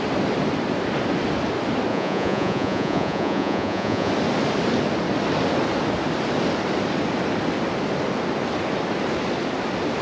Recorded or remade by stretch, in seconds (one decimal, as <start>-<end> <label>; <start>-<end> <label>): 0.0-1.9 recorded; 1.9-4.1 remade; 4.1-10.0 recorded

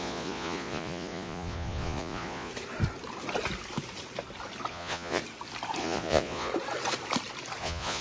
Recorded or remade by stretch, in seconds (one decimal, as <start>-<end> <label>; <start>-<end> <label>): 0.0-2.5 remade; 2.5-4.7 recorded; 4.7-5.2 remade; 5.2-5.8 recorded; 5.8-6.5 remade; 6.5-7.6 recorded; 7.6-8.0 remade

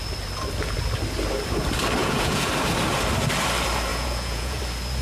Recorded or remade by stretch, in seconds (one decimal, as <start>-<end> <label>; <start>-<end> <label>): 0.0-2.0 recorded; 2.0-2.5 remade; 2.5-3.9 recorded; 3.9-4.6 remade; 4.6-5.0 recorded

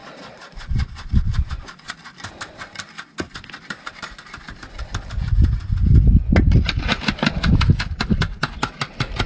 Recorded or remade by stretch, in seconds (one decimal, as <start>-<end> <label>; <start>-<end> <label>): 0.0-2.0 remade; 2.0-9.3 recorded

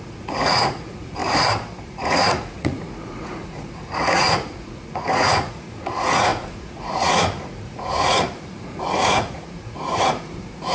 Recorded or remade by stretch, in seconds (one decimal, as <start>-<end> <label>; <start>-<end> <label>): 0.0-1.2 remade; 1.2-1.8 recorded; 1.8-10.7 remade

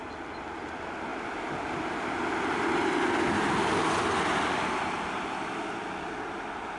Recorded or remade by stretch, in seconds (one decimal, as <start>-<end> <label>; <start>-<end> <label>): 0.0-6.8 recorded